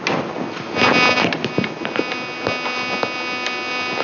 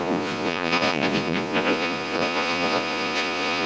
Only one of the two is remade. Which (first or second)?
second